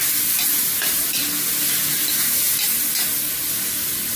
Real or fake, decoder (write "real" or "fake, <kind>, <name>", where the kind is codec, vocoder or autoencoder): real